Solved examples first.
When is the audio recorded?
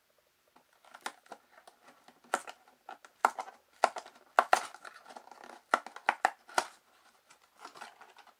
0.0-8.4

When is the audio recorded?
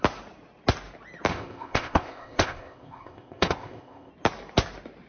0.0-1.3; 4.1-5.1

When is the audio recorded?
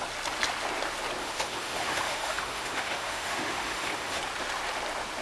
0.0-1.2; 4.2-5.2